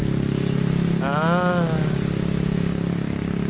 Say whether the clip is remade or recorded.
recorded